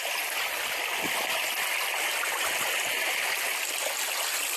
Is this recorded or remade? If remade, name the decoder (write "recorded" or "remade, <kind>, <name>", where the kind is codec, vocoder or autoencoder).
recorded